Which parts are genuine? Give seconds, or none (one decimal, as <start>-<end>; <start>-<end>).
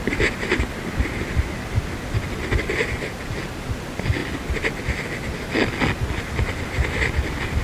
0.0-7.6